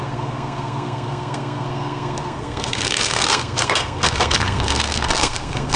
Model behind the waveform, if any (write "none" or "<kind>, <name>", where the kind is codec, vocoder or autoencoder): codec, SNAC